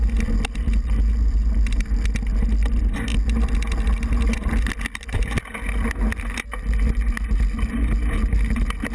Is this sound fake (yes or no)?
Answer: no